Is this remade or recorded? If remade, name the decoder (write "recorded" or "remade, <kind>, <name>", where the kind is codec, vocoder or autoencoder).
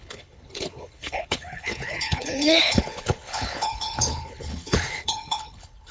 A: remade, codec, HILCodec